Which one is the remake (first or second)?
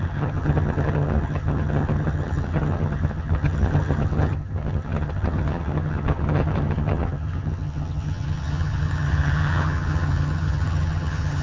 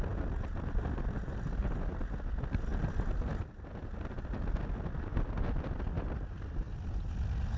first